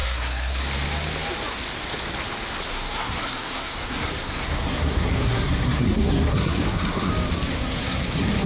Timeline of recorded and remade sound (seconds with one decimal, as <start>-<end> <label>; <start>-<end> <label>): 0.0-0.6 remade; 0.6-2.7 recorded; 2.7-7.1 remade; 7.1-7.5 recorded; 7.5-8.5 remade